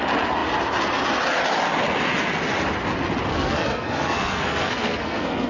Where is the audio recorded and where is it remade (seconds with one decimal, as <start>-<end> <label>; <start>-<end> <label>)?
0.0-3.3 recorded; 3.3-5.5 remade